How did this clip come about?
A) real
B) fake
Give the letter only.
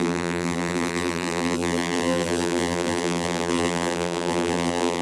B